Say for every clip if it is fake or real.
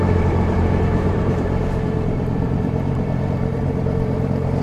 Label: fake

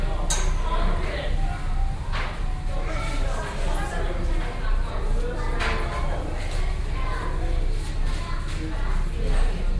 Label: real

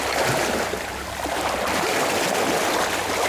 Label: real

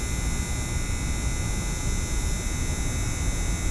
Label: real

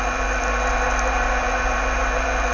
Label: fake